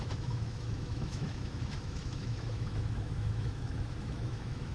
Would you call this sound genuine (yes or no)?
no